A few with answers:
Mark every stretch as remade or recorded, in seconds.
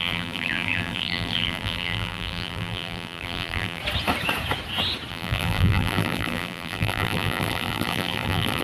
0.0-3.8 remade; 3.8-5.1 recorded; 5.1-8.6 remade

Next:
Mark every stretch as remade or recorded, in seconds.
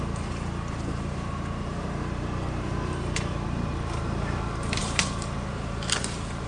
0.0-6.5 remade